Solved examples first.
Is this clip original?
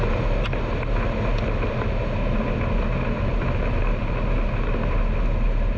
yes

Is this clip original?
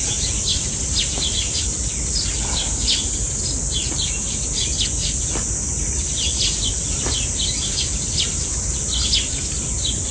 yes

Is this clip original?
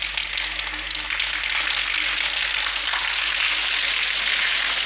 yes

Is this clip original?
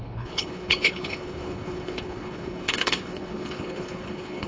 no